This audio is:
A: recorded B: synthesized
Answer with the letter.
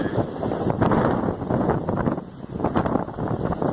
A